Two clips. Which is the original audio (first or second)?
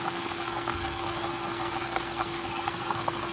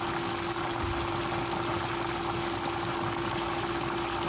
second